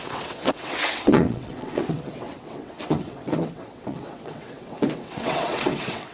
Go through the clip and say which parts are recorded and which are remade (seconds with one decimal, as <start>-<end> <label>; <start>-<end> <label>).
0.0-6.1 remade